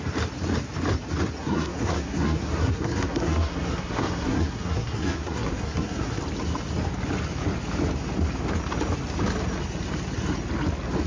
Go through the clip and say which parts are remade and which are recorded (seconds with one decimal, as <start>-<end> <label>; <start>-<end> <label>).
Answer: 0.0-1.4 recorded; 1.4-6.2 remade; 6.2-11.1 recorded